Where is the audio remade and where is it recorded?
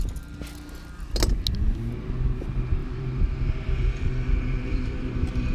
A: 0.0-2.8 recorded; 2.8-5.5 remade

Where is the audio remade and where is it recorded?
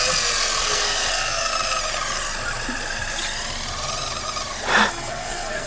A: 0.0-0.6 recorded; 0.6-1.5 remade; 1.5-4.9 recorded; 4.9-5.7 remade